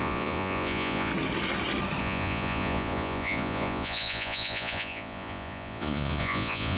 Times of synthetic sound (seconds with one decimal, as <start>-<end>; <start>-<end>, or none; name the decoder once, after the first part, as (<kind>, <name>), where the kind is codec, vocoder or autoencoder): 0.0-1.1 (vocoder, Vocos); 2.0-6.8